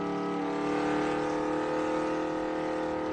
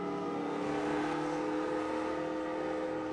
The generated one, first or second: second